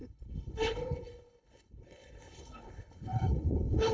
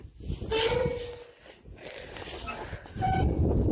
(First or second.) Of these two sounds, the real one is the second